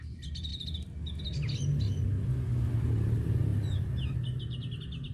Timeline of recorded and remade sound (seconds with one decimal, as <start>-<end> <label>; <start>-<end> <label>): 0.0-5.1 recorded